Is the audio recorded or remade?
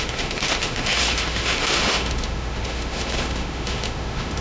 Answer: remade